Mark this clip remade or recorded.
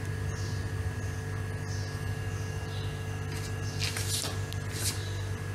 recorded